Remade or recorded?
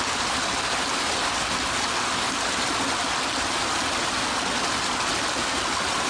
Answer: recorded